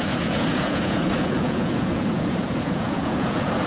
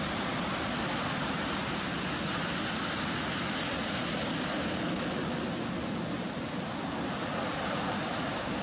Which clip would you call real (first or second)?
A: second